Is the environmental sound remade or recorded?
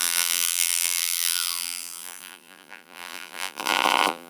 remade